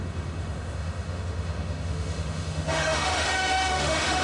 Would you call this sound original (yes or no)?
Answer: no